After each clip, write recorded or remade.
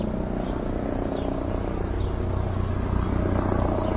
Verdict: recorded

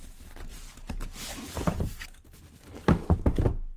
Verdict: remade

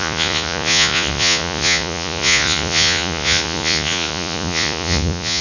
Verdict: remade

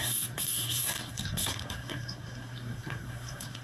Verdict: remade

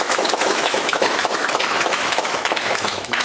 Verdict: remade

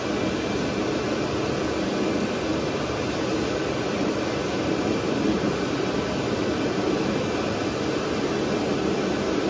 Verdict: recorded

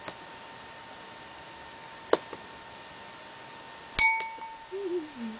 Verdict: recorded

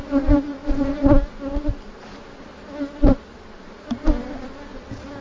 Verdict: recorded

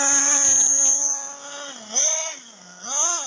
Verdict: recorded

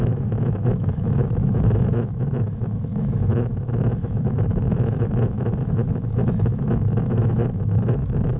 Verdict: remade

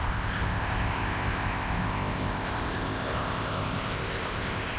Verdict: remade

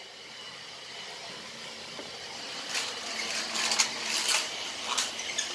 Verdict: recorded